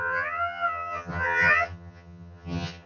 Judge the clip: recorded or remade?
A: remade